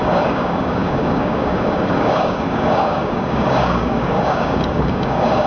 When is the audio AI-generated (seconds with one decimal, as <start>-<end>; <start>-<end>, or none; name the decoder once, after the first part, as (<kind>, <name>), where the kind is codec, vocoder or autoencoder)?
0.0-5.5 (codec, DAC)